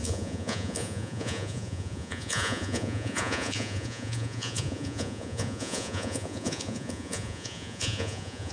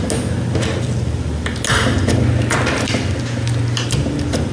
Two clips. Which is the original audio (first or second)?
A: second